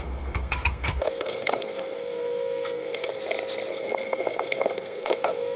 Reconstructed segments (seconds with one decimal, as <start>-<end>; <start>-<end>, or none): 0.0-3.2; 3.7-5.6